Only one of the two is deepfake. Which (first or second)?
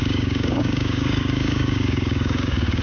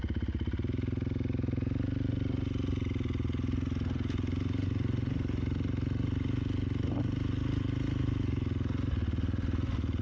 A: first